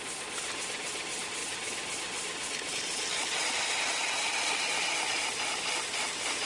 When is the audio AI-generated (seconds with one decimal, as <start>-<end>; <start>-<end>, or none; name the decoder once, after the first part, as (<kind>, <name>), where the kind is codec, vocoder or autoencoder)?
3.4-4.5 (vocoder, BigVGAN v2)